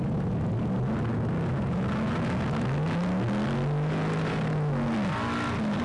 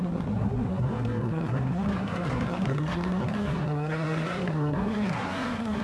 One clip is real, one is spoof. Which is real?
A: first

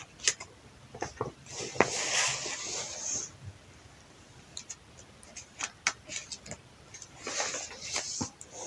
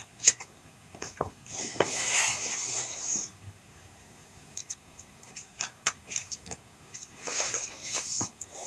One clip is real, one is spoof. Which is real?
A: first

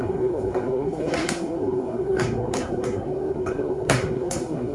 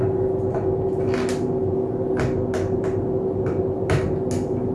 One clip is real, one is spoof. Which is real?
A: second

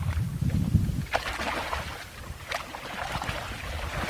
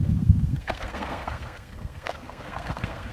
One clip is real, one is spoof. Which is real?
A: first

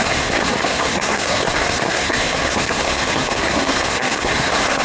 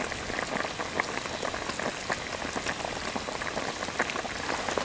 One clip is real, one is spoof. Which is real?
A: second